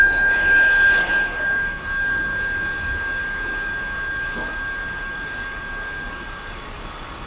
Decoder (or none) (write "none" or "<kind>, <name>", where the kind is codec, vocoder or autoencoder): codec, DAC